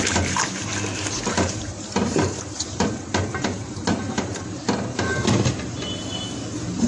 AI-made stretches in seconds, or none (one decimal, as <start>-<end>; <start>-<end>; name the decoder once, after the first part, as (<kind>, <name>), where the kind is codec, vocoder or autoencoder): 0.0-0.7 (vocoder, BigVGAN v2); 1.3-6.9